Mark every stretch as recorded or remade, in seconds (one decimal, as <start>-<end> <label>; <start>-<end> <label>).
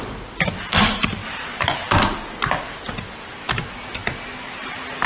0.0-5.1 recorded